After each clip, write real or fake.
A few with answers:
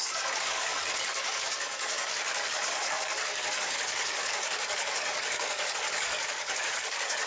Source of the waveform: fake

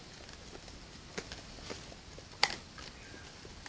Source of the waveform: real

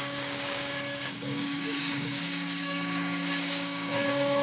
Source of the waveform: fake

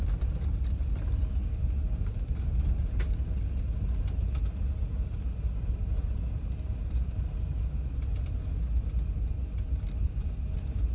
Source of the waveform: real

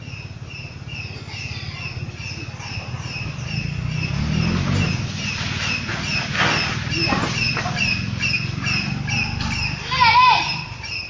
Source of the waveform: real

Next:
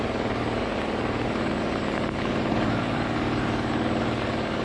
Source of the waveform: fake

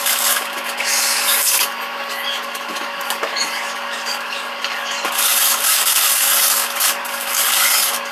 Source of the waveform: fake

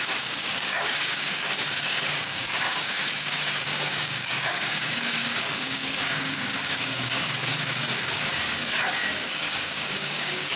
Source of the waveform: fake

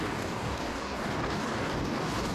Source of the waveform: fake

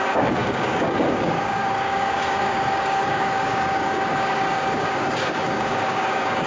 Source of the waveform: fake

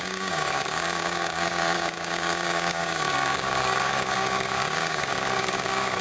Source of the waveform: fake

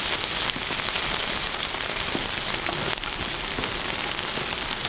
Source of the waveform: real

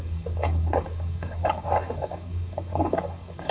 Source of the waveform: fake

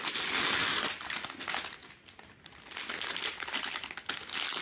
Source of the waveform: real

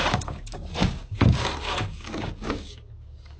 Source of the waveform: fake